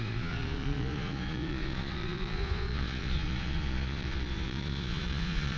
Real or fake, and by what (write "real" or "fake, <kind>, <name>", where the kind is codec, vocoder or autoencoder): fake, vocoder, Vocos